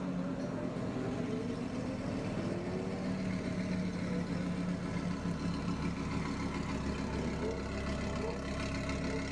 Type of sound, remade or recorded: recorded